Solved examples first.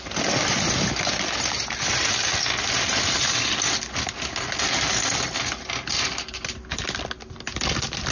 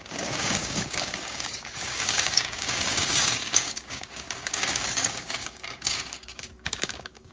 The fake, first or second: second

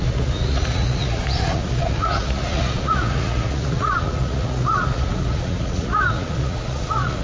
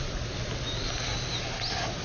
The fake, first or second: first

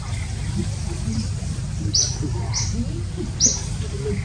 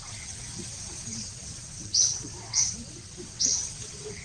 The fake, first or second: second